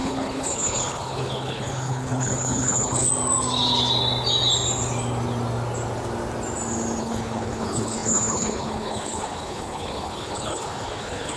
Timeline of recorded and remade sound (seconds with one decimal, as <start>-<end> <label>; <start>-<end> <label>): 0.0-3.1 remade; 3.1-7.0 recorded; 7.0-11.4 remade